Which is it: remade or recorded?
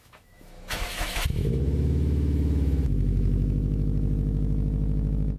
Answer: remade